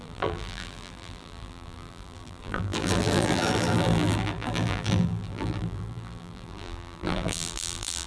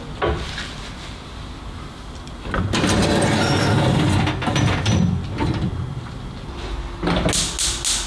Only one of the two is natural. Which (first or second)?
second